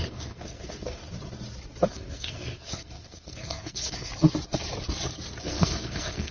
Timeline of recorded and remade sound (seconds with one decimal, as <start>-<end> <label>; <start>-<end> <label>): 0.0-1.0 remade; 1.0-1.9 recorded; 1.9-4.1 remade; 4.1-5.4 recorded; 5.4-6.3 remade

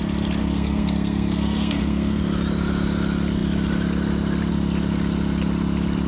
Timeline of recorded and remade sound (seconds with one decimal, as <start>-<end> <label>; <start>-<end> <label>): 0.0-0.4 recorded; 0.4-2.2 remade; 2.2-6.1 recorded

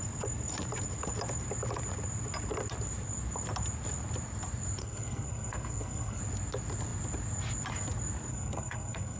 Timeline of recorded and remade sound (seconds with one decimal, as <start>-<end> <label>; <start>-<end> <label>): 0.0-4.8 recorded; 4.8-6.2 remade; 6.2-8.3 recorded; 8.3-9.2 remade

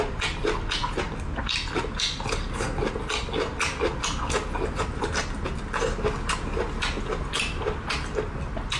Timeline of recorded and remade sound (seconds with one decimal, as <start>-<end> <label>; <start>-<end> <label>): 0.0-8.8 recorded

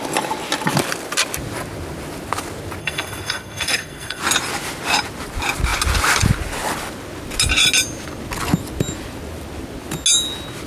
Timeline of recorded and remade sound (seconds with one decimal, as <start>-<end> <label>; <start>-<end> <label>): 0.0-2.8 recorded; 2.8-4.2 remade; 4.2-10.7 recorded

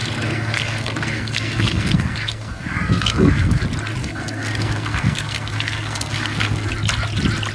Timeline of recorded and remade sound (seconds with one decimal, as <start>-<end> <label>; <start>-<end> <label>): 0.0-3.6 remade; 3.6-4.0 recorded; 4.0-6.7 remade; 6.7-7.5 recorded

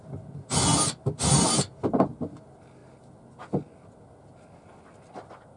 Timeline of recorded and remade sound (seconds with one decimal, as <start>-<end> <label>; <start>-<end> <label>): 0.0-5.6 recorded

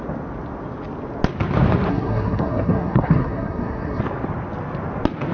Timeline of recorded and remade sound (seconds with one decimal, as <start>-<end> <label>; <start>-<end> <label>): 0.0-1.9 recorded; 1.9-4.0 remade; 4.0-5.3 recorded